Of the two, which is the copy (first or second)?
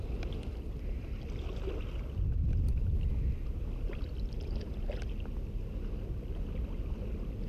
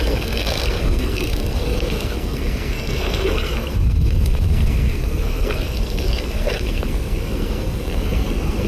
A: second